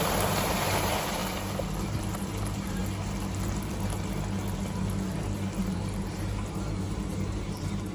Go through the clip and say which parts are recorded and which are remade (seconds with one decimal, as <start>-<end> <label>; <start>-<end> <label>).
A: 0.0-1.2 remade; 1.2-1.8 recorded; 1.8-2.8 remade; 2.8-5.6 recorded; 5.6-7.9 remade